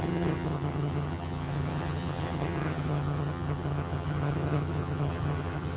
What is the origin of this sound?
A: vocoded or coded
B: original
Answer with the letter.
A